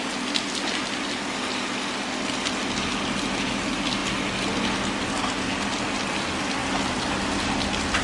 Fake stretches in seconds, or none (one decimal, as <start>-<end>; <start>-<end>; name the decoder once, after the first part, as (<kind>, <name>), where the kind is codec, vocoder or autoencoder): none